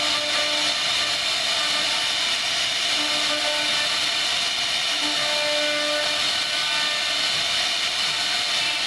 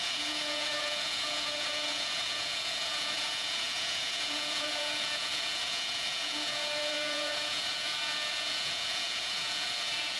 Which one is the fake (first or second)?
second